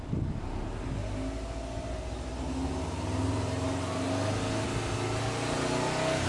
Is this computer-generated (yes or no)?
no